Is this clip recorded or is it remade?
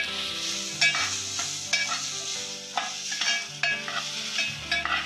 recorded